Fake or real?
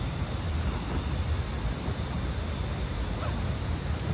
real